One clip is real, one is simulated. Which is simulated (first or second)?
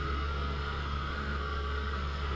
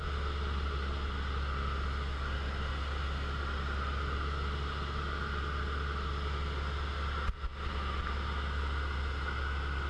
first